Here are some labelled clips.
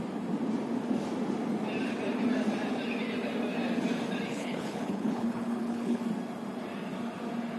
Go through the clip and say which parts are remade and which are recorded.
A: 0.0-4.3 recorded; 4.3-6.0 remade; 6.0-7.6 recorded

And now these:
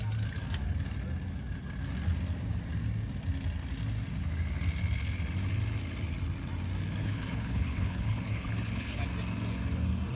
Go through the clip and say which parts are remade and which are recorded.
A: 0.0-7.0 recorded; 7.0-9.0 remade; 9.0-10.2 recorded

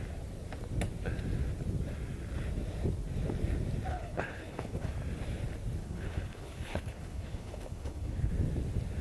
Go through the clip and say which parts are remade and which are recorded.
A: 0.0-3.9 recorded; 3.9-4.9 remade; 4.9-5.8 recorded; 5.8-8.3 remade; 8.3-9.0 recorded

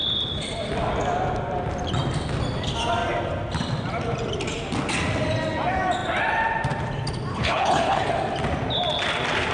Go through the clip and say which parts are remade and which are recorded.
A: 0.0-7.3 recorded; 7.3-8.1 remade; 8.1-9.5 recorded

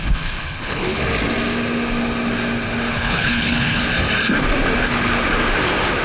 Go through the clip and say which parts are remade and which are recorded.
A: 0.0-1.0 remade; 1.0-2.9 recorded; 2.9-3.8 remade; 3.8-6.0 recorded

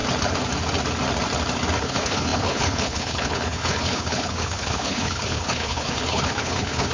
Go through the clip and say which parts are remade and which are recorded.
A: 0.0-1.8 recorded; 1.8-6.9 remade

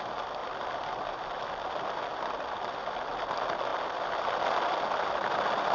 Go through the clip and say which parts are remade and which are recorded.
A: 0.0-5.7 recorded